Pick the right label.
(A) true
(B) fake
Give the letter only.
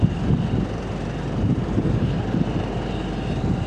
A